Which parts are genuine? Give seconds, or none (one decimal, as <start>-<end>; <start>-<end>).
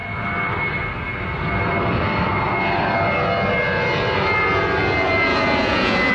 0.0-5.3